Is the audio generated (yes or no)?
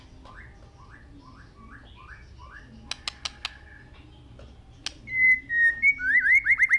no